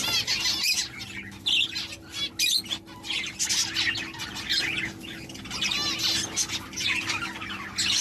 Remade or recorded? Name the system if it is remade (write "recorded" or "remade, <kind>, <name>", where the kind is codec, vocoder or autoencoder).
recorded